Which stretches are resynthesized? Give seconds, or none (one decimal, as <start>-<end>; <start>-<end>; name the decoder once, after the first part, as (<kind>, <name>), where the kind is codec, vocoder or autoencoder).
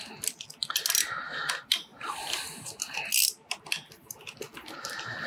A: none